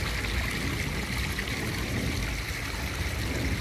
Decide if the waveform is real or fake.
real